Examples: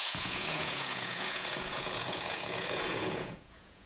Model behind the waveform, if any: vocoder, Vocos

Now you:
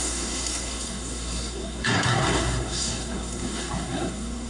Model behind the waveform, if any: codec, SNAC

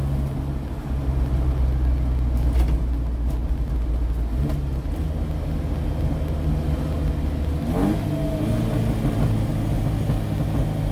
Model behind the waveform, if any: none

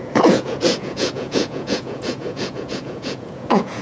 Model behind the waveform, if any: vocoder, Vocos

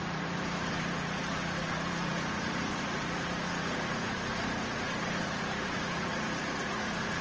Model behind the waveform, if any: vocoder, Vocos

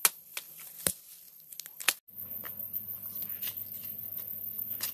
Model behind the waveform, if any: none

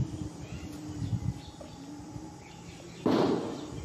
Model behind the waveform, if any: none